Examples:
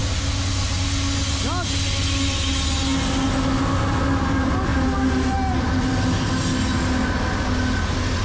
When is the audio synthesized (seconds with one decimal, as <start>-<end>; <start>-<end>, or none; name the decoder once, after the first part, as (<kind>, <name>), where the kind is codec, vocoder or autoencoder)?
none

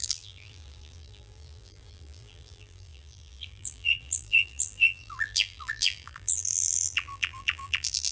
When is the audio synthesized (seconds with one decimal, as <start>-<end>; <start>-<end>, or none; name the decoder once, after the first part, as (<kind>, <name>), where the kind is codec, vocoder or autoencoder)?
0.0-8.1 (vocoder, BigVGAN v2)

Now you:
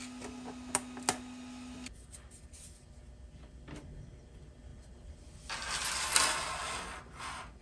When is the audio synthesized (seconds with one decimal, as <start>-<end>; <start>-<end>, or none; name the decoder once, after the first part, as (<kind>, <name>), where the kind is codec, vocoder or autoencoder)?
none